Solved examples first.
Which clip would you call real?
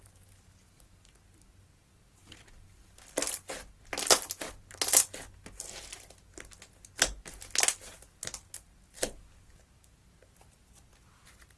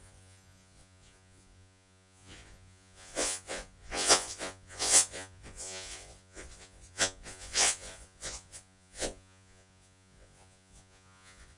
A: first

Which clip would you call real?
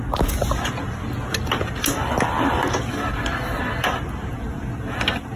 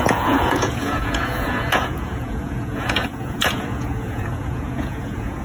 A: first